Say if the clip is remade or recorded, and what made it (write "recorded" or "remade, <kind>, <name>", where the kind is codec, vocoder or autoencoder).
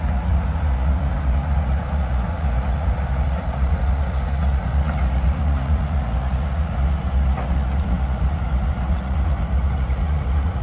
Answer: remade, vocoder, Vocos